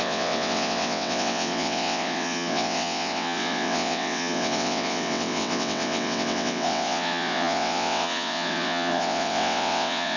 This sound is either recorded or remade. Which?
remade